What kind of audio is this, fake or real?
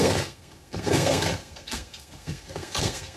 fake